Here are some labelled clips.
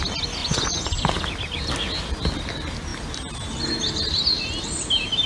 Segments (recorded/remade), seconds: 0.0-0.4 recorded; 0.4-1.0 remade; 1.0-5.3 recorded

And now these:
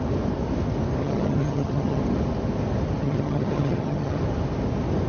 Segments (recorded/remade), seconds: 0.0-1.0 recorded; 1.0-2.0 remade; 2.0-3.0 recorded; 3.0-4.2 remade; 4.2-5.1 recorded

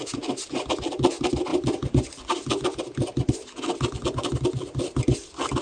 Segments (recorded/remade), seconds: 0.0-5.6 recorded

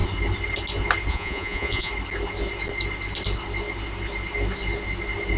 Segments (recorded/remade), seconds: 0.0-1.1 recorded; 1.1-1.9 remade; 1.9-5.4 recorded

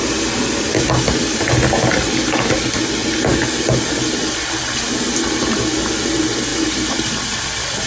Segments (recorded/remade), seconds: 0.0-7.9 recorded

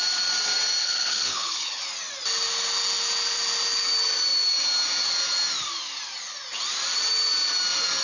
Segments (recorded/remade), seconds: 0.0-0.8 recorded; 0.8-1.8 remade; 1.8-8.0 recorded

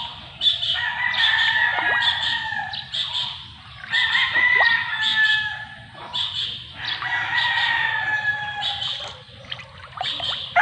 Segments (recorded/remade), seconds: 0.0-10.6 recorded

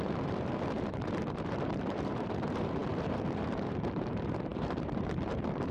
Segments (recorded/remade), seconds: 0.0-5.7 remade